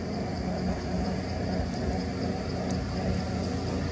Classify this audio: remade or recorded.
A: recorded